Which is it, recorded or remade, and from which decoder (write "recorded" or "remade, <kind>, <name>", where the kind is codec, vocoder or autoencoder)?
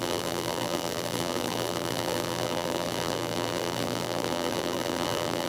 remade, vocoder, BigVGAN v2